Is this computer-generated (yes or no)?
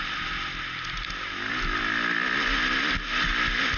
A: no